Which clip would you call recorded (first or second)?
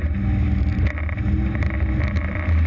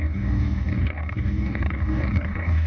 first